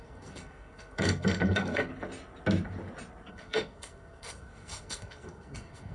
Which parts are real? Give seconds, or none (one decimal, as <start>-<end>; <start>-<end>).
1.9-3.3